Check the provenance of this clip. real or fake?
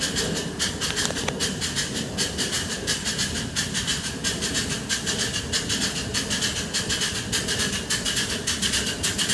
real